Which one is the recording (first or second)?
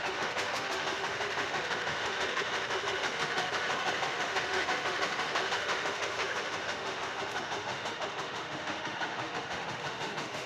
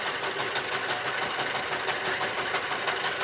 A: second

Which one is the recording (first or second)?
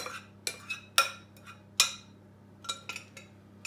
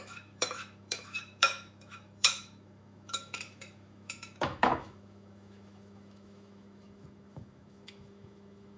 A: first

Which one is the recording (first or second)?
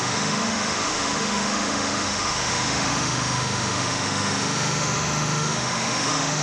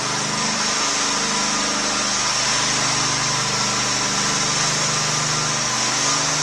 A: second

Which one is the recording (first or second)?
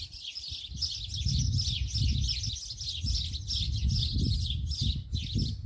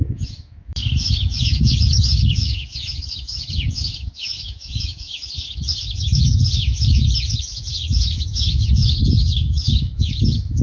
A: first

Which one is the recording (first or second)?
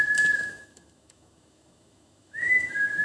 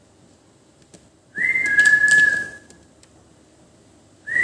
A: second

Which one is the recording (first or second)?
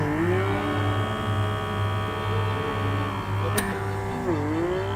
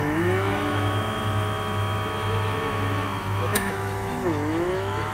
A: first